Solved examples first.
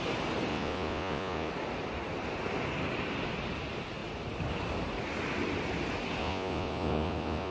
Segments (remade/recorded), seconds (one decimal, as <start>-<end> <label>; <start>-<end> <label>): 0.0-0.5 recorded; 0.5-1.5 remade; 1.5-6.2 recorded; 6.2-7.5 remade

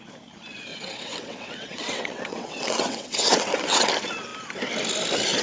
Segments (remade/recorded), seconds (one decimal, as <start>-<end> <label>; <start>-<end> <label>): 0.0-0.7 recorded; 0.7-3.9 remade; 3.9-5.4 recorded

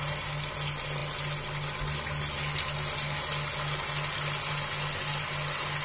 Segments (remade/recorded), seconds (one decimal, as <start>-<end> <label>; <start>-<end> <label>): 0.0-5.8 recorded

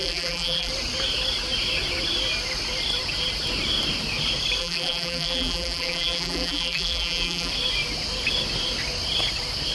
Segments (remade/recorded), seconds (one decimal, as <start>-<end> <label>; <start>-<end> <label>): 0.0-0.7 remade; 0.7-4.6 recorded; 4.6-7.5 remade; 7.5-9.7 recorded

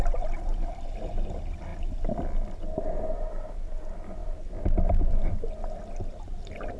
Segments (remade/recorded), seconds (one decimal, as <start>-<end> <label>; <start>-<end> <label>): 0.0-6.8 recorded

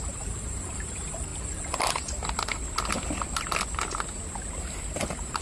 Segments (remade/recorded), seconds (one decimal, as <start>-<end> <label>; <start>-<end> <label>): 0.0-1.3 remade; 1.3-4.5 recorded; 4.5-5.4 remade

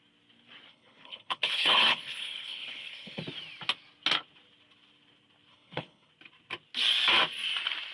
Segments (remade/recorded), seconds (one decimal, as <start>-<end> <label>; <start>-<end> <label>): 0.0-0.7 recorded; 0.7-3.2 remade; 3.2-5.5 recorded; 5.5-6.1 remade; 6.1-7.9 recorded

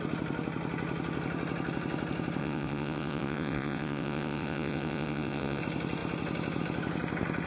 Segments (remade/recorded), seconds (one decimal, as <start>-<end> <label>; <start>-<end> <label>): 0.0-2.4 recorded; 2.4-5.6 remade; 5.6-7.5 recorded